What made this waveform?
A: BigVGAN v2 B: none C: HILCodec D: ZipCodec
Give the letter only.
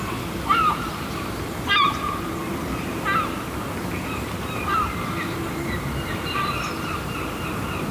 A